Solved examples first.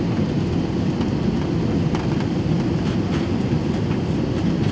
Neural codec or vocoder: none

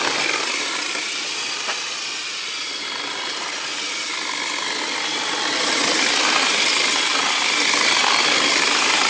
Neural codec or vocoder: none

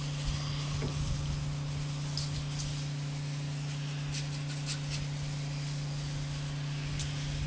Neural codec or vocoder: none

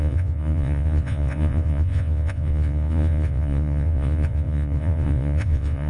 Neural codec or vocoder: vocoder, Vocos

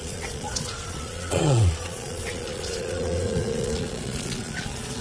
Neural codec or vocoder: vocoder, Vocos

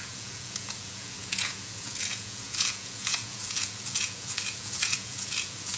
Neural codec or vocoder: vocoder, Vocos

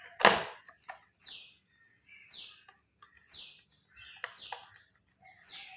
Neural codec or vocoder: none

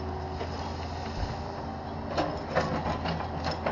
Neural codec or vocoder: none